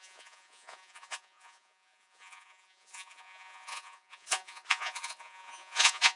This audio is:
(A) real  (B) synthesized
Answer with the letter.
B